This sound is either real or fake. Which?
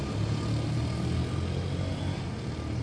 real